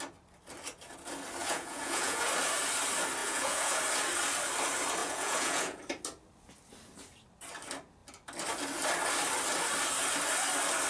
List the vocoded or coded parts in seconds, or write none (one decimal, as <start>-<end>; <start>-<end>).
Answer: 1.4-2.3; 3.2-3.8; 5.0-5.8